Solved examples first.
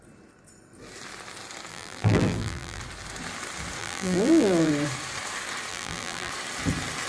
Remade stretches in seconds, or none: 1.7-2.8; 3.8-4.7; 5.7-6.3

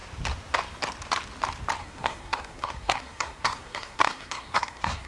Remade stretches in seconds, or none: 1.8-5.1

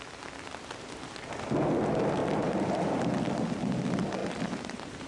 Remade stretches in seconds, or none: 2.2-3.0; 4.2-5.1

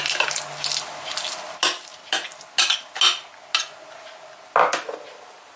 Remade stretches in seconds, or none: none

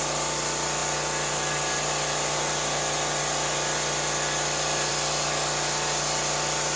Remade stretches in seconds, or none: none

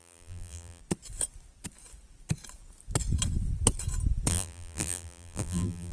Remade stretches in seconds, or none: 0.0-0.8; 4.3-5.9

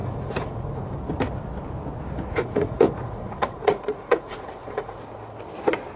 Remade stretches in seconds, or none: 0.0-0.9; 2.3-5.0